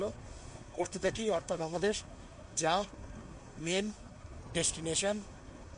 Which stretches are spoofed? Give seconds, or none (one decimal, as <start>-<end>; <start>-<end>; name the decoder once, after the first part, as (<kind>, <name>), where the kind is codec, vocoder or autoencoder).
0.0-4.4 (codec, SNAC); 5.0-5.8